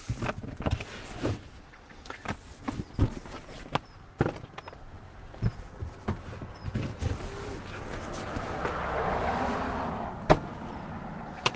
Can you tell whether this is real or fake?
real